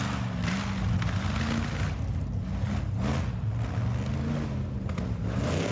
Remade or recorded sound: recorded